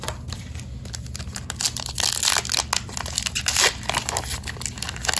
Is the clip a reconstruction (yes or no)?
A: no